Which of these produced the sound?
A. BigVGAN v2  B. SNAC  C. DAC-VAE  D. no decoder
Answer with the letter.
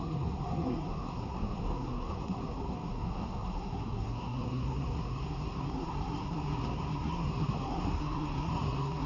B